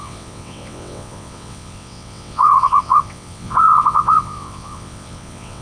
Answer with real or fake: fake